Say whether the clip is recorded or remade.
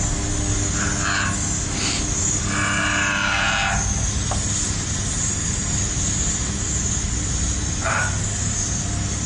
recorded